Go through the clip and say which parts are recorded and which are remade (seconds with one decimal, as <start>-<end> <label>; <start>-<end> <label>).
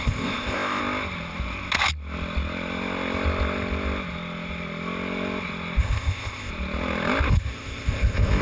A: 0.0-0.8 remade; 0.8-5.8 recorded; 5.8-6.5 remade; 6.5-7.3 recorded; 7.3-8.4 remade